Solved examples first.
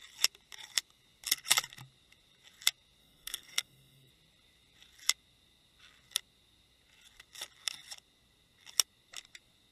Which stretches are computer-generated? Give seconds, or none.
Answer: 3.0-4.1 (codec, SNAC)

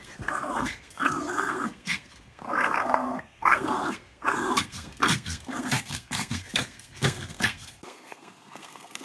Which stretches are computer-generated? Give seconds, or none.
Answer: 0.0-9.0 (codec, SNAC)

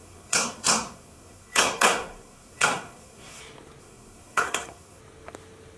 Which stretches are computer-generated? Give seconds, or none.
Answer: 0.0-3.4 (codec, SNAC); 3.8-5.0

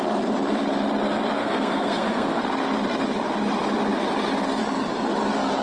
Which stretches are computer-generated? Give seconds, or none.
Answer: 1.4-2.4 (codec, SNAC)